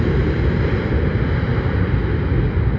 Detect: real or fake real